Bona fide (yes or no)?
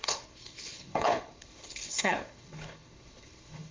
no